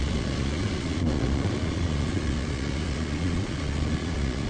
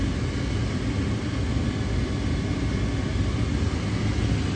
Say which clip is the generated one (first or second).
first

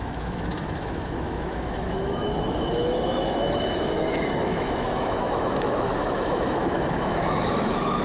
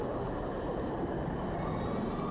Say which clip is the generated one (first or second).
first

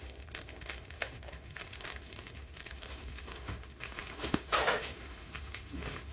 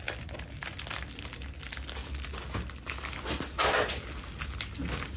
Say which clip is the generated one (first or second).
first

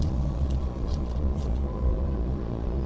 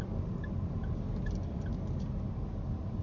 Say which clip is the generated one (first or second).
first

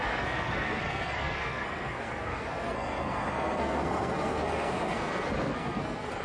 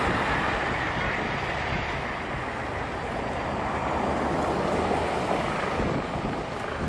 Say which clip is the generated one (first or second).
first